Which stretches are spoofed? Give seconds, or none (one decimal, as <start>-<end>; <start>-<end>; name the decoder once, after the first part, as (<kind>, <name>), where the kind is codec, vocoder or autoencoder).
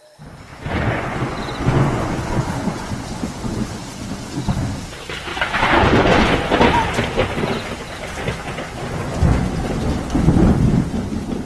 0.5-4.1 (vocoder, Vocos); 5.3-6.5; 9.0-9.6